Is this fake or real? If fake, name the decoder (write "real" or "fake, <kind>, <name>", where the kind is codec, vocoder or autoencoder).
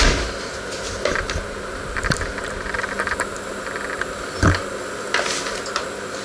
real